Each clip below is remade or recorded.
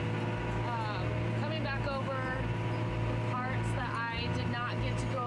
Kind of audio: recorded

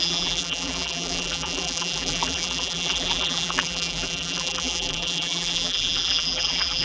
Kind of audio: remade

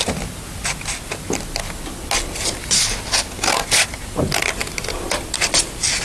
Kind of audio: recorded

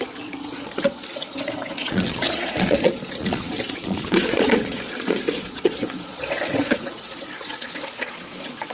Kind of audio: remade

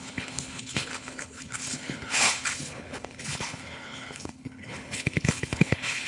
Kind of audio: remade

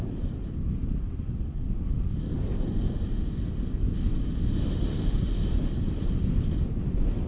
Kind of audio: recorded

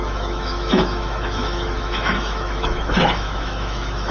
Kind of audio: remade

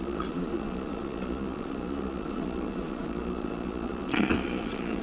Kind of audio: remade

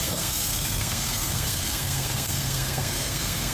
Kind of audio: remade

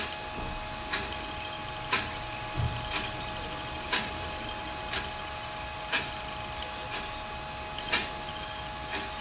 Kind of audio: recorded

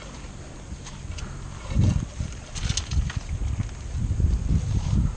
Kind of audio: recorded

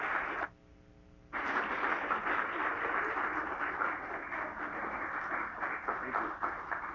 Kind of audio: recorded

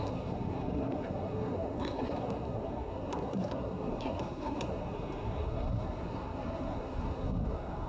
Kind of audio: remade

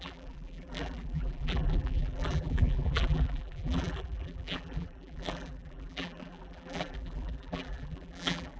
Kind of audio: remade